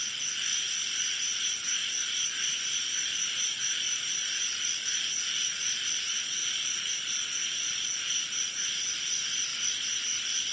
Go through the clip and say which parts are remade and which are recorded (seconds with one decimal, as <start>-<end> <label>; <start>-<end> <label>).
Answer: 0.0-0.5 recorded; 0.5-1.4 remade; 1.4-1.8 recorded; 1.8-6.0 remade; 6.0-6.4 recorded; 6.4-6.9 remade; 6.9-10.5 recorded